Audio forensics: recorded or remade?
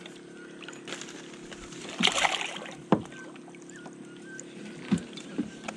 recorded